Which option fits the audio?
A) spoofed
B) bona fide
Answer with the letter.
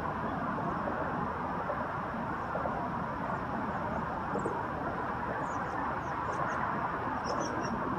B